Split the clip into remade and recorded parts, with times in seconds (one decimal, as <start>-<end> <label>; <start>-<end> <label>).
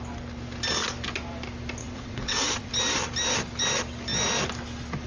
0.0-1.8 recorded; 1.8-2.7 remade; 2.7-5.1 recorded